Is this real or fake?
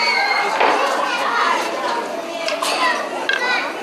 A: real